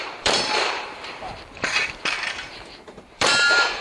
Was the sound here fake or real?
fake